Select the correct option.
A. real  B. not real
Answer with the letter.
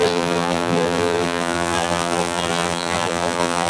B